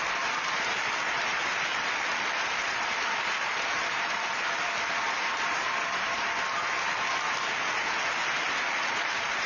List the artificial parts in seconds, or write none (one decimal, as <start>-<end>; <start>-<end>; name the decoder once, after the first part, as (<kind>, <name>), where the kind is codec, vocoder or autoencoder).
none